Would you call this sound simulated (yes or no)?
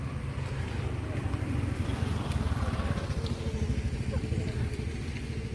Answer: no